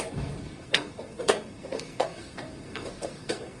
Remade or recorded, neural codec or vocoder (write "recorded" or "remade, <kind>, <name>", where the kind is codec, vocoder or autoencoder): remade, codec, SNAC